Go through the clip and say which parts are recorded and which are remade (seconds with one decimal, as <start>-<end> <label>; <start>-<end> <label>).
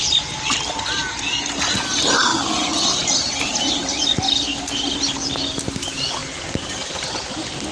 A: 0.0-2.3 recorded; 2.3-4.0 remade; 4.0-7.7 recorded